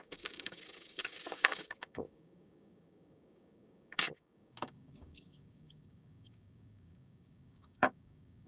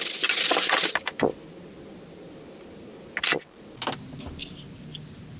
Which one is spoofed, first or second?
first